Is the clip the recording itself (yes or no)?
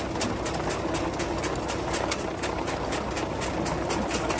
yes